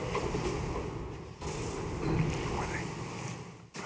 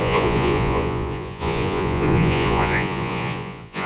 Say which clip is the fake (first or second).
second